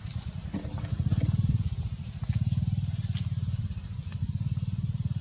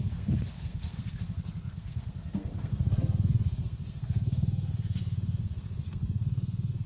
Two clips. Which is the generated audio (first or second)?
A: second